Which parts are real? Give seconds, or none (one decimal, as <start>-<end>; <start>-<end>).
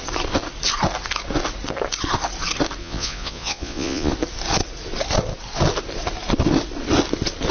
0.0-2.8; 4.1-7.5